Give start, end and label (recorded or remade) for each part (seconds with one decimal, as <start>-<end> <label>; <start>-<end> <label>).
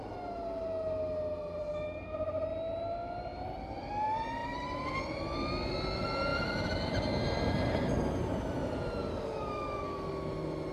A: 0.0-9.0 recorded; 9.0-10.1 remade; 10.1-10.7 recorded